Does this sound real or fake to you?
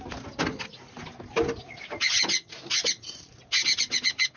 real